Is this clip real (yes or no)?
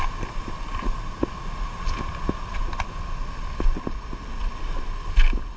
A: yes